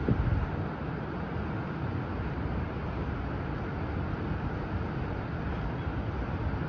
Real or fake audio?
real